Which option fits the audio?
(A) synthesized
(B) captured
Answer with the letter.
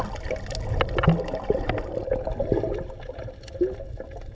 B